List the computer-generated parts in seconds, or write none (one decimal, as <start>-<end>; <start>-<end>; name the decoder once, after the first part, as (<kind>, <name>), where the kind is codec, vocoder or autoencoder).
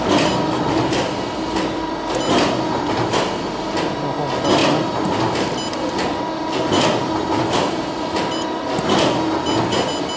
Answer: none